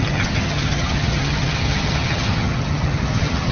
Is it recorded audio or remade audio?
remade